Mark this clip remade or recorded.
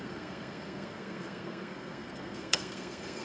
remade